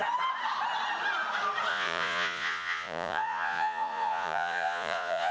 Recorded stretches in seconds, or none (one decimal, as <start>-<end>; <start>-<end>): 0.0-1.7